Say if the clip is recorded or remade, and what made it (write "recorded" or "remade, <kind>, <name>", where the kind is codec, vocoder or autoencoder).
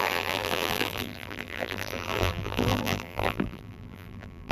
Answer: remade, vocoder, BigVGAN v2